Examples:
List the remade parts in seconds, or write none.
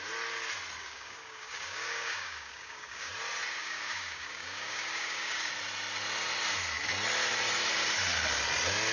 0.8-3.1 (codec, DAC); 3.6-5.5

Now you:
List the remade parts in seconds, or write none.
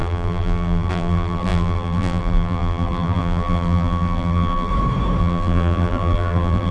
0.0-4.7 (vocoder, BigVGAN v2); 5.2-6.7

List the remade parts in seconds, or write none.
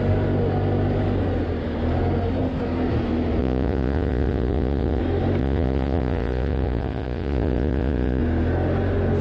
3.4-5.0 (vocoder, Vocos); 5.4-8.2